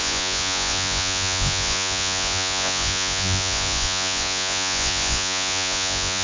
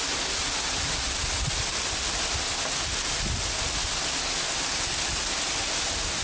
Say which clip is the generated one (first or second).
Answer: first